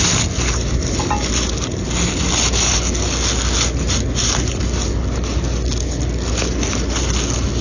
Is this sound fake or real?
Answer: real